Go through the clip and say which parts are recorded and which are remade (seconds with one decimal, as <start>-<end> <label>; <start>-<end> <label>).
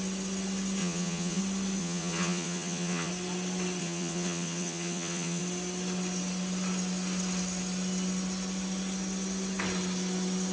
0.0-0.8 recorded; 0.8-1.4 remade; 1.4-1.8 recorded; 1.8-3.1 remade; 3.1-3.8 recorded; 3.8-5.4 remade; 5.4-10.5 recorded